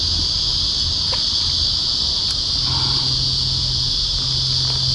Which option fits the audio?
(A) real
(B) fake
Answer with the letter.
A